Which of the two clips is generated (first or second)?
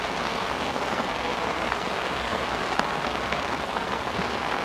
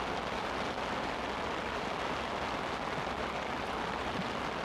first